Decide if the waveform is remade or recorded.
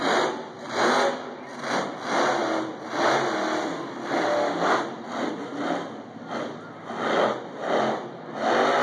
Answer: recorded